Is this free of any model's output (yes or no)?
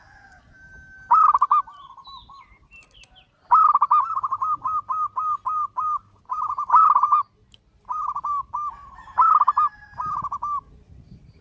yes